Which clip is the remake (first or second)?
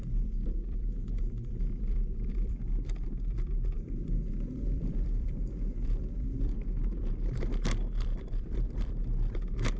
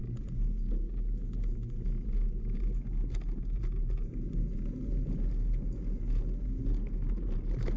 first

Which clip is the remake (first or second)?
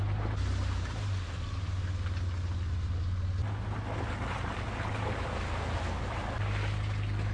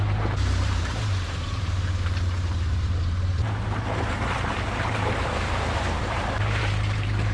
second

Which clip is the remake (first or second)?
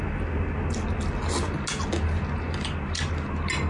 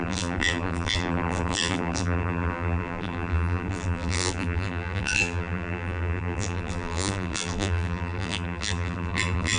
second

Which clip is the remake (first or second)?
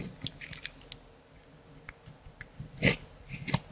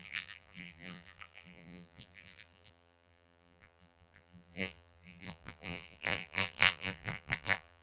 second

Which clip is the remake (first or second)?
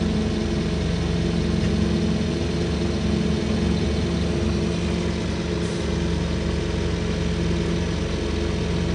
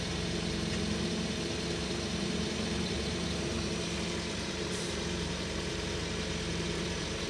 second